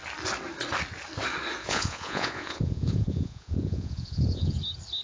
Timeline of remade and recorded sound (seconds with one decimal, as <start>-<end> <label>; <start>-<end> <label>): 0.0-1.6 recorded; 1.6-4.6 remade; 4.6-5.0 recorded